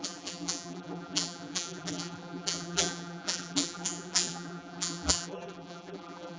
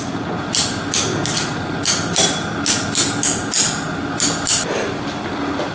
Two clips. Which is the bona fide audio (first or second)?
second